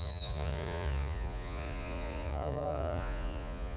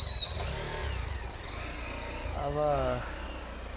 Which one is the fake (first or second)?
first